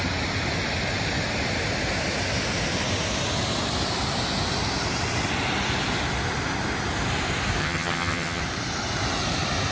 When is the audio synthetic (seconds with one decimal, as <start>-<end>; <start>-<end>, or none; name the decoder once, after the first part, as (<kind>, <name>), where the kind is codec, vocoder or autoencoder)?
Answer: 7.6-8.4 (vocoder, HiFi-GAN)